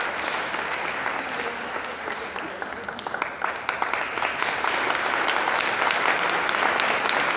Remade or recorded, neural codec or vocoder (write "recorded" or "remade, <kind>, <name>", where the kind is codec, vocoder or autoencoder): recorded